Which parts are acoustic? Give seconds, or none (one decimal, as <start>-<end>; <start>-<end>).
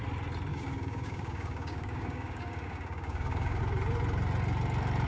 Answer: 0.0-0.5; 3.6-5.1